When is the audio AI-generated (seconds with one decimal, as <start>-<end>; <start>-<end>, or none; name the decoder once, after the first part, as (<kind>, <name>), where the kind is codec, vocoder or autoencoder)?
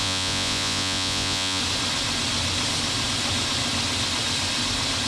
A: 0.0-1.6 (vocoder, Vocos)